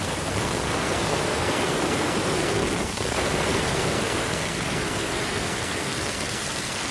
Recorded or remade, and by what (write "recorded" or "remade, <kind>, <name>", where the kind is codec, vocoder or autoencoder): remade, codec, SNAC